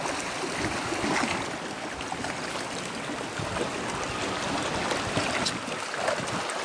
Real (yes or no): yes